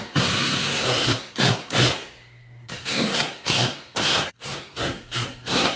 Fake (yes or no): yes